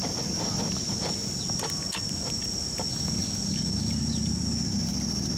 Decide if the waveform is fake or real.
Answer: real